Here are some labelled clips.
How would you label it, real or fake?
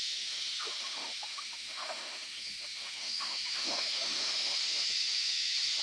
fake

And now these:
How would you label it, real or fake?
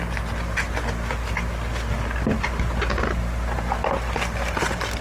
real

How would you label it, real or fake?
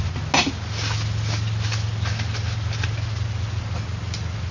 real